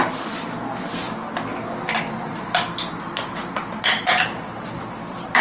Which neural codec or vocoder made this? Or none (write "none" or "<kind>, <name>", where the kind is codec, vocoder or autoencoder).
none